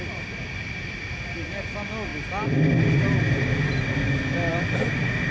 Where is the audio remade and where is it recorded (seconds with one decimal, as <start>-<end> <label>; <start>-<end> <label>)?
0.0-5.3 recorded

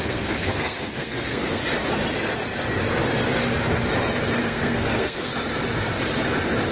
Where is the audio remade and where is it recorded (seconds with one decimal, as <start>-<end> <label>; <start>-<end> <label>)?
0.0-1.6 remade; 1.6-4.4 recorded; 4.4-5.3 remade; 5.3-6.7 recorded

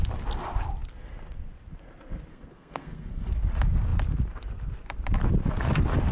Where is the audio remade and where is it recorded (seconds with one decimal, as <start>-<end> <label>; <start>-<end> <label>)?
0.0-2.3 recorded; 2.3-3.3 remade; 3.3-6.1 recorded

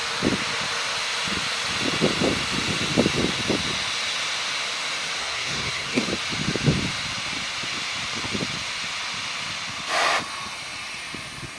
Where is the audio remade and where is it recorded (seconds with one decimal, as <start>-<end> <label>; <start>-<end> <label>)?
0.0-5.2 recorded; 5.2-6.0 remade; 6.0-11.6 recorded

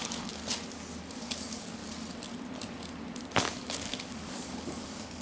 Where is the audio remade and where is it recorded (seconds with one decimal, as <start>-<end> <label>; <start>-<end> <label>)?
0.0-0.4 remade; 0.4-1.1 recorded; 1.1-1.8 remade; 1.8-3.4 recorded; 3.4-5.2 remade

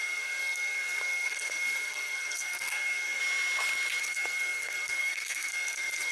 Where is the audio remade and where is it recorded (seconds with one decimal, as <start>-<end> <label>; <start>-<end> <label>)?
0.0-3.2 remade; 3.2-4.0 recorded; 4.0-6.1 remade